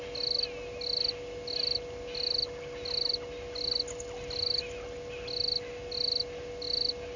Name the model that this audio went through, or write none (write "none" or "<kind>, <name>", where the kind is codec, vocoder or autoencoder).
none